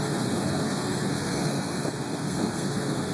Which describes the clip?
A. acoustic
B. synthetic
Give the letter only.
B